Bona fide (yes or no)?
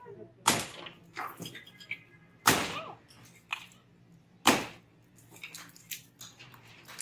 yes